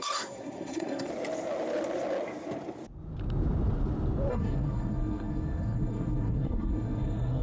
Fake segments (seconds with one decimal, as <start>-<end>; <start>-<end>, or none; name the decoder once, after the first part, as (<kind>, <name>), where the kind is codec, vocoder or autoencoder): 0.0-1.1 (codec, SNAC); 4.3-7.4